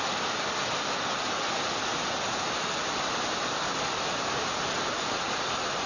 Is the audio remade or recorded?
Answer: recorded